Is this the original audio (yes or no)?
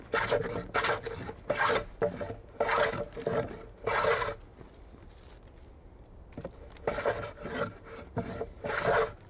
yes